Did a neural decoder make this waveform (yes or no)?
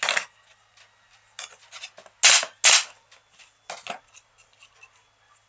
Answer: no